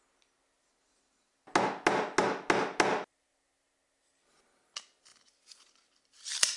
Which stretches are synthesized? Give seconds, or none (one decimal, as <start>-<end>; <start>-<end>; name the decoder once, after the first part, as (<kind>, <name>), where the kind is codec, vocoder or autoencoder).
none